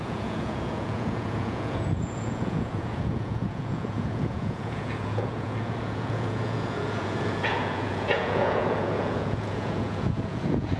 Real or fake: fake